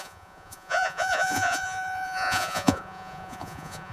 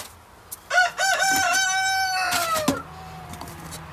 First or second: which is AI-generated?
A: first